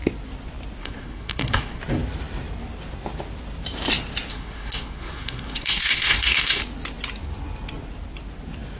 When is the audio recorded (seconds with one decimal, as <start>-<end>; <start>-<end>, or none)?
0.0-0.8; 1.8-4.3; 6.6-8.8